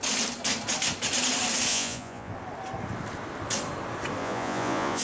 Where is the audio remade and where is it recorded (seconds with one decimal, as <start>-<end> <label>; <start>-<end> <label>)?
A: 0.0-1.7 recorded; 1.7-2.3 remade; 2.3-4.2 recorded; 4.2-5.0 remade